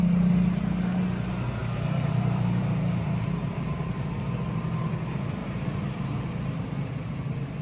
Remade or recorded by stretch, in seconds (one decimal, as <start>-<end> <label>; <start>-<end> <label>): 0.0-1.6 recorded; 1.6-4.2 remade; 4.2-5.4 recorded; 5.4-6.7 remade; 6.7-7.6 recorded